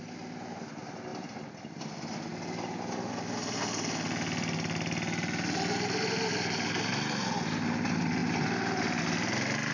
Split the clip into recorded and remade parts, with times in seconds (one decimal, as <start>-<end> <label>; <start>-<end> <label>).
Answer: 0.0-1.1 recorded; 1.1-1.8 remade; 1.8-9.7 recorded